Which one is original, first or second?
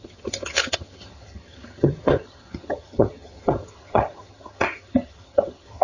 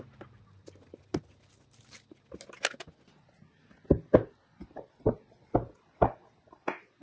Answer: second